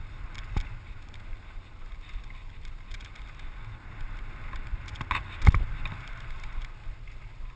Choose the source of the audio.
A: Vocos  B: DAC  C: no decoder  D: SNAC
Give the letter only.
C